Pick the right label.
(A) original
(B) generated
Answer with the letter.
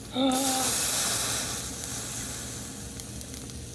A